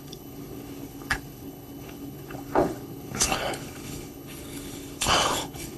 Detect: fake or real fake